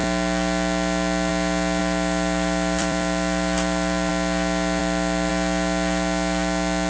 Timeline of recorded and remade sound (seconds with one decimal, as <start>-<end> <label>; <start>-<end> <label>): 0.0-1.8 recorded; 1.8-4.1 remade; 4.1-4.8 recorded; 4.8-5.3 remade; 5.3-6.9 recorded